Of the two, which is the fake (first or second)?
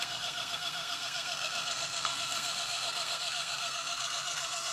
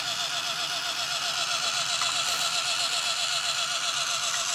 first